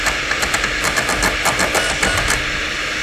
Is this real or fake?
real